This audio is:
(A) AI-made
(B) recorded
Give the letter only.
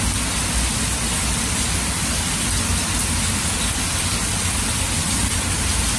B